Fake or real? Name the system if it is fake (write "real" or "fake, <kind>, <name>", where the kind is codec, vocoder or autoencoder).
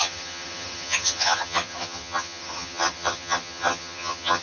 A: fake, vocoder, HiFi-GAN